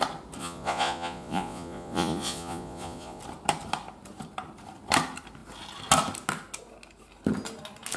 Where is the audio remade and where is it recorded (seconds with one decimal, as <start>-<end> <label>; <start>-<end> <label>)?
0.0-0.4 recorded; 0.4-3.2 remade; 3.2-8.0 recorded